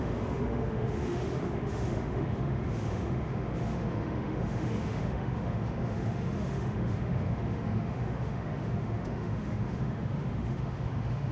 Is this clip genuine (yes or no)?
no